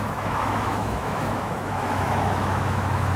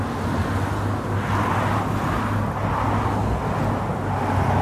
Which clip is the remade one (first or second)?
first